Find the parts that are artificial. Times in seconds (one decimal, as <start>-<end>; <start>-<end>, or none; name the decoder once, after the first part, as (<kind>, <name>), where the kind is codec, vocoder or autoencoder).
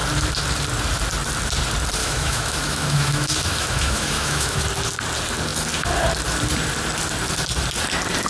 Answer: 2.0-4.6 (autoencoder, DAC-VAE)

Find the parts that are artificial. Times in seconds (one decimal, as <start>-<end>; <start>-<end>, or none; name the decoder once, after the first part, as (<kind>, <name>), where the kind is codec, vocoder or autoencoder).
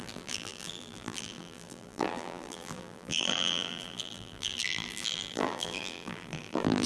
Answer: 0.0-6.9 (vocoder, BigVGAN v2)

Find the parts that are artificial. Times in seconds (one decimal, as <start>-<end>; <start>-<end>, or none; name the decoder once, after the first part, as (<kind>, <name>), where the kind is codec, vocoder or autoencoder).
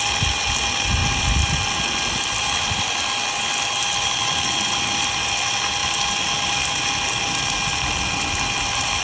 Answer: none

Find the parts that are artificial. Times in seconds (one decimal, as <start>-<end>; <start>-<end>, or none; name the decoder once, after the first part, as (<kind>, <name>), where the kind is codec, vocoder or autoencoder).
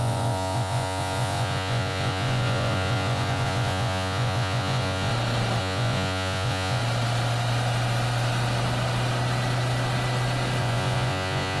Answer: 0.0-5.1 (vocoder, Vocos); 5.6-6.8; 10.6-11.6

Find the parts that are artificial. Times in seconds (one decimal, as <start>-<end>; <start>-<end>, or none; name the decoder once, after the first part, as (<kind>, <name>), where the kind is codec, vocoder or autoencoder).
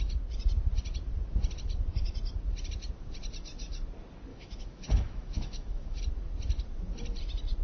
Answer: 4.3-6.0 (autoencoder, DAC-VAE)